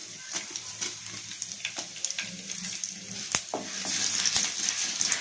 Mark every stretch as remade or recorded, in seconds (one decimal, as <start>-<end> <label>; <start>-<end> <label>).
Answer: 0.0-5.2 recorded